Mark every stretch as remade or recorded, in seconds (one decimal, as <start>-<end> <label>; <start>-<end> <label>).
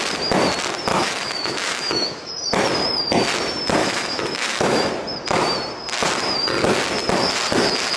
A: 0.0-0.9 recorded; 0.9-2.3 remade; 2.3-3.8 recorded; 3.8-4.9 remade; 4.9-8.0 recorded